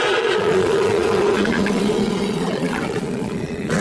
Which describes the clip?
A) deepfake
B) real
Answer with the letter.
A